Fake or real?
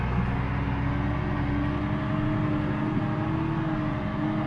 real